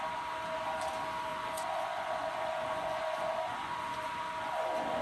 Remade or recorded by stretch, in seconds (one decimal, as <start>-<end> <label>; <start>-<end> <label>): 0.0-1.3 recorded; 1.3-4.3 remade; 4.3-5.0 recorded